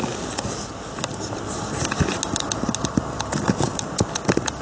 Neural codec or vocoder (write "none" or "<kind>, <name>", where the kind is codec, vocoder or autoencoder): none